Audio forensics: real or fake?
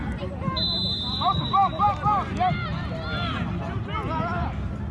fake